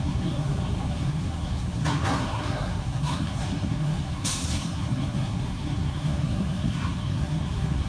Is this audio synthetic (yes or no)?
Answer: yes